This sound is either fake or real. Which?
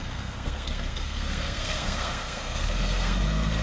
fake